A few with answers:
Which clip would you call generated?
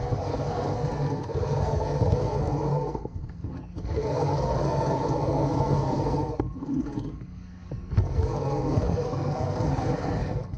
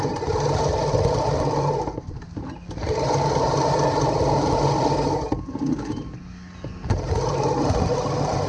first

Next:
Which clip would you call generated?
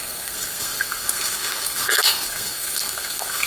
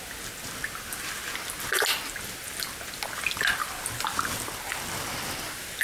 first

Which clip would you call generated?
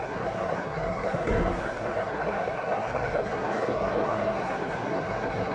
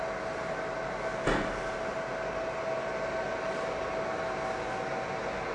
first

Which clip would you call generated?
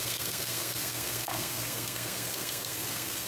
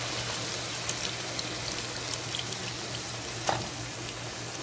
first